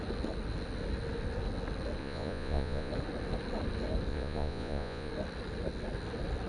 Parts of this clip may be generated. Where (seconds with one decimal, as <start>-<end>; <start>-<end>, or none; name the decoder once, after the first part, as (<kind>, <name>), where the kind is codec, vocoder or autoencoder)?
2.0-2.9 (vocoder, Vocos); 4.1-5.1